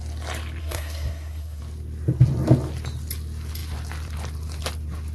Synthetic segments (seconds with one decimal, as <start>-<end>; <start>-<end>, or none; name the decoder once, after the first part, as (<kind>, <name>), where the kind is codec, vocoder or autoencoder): 0.6-1.6 (codec, SNAC)